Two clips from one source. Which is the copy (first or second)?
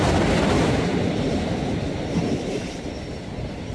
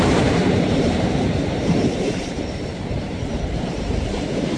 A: second